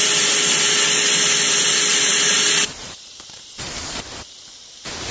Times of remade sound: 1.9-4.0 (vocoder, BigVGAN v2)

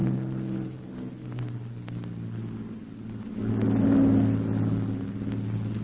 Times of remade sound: none